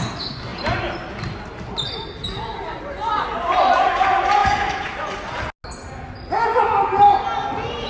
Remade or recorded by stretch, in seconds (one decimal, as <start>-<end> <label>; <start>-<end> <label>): 0.0-7.9 recorded